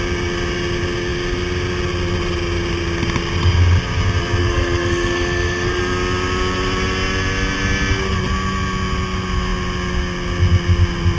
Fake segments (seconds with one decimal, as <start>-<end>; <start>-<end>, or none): 4.4-5.8